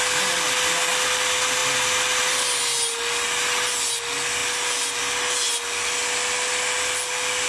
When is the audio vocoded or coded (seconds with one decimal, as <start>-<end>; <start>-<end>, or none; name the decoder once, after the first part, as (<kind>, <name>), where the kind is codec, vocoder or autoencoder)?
none